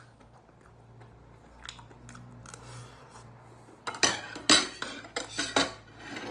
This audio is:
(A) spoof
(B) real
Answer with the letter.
B